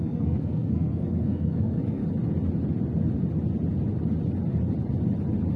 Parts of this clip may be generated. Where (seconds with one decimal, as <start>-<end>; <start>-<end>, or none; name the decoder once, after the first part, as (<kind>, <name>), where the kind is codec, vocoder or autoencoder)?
0.0-2.0 (codec, SNAC)